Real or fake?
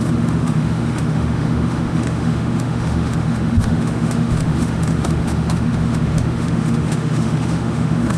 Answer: fake